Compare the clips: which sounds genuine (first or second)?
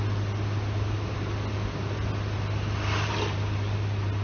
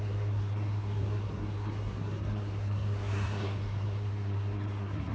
first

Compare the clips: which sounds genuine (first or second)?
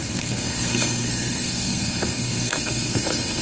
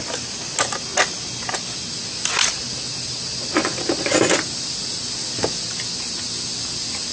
second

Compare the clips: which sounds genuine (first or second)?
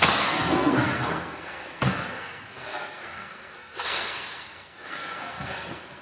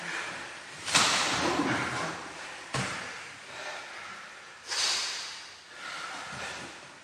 second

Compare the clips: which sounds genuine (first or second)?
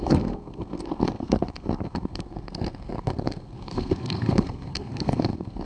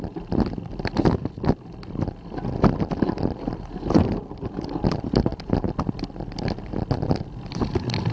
second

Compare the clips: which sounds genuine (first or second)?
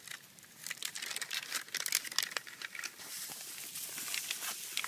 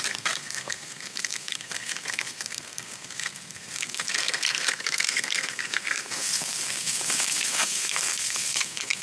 first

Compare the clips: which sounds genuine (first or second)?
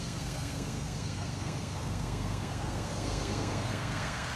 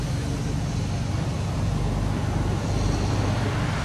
second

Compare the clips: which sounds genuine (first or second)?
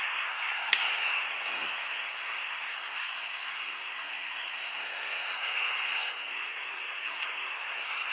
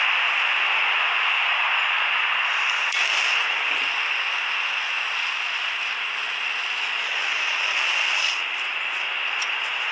second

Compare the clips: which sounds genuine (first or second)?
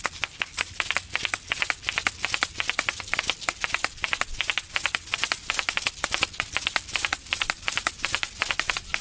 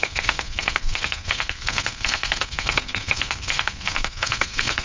first